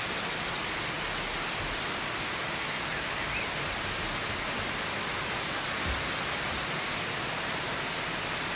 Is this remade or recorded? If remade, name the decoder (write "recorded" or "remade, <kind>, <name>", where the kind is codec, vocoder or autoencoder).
recorded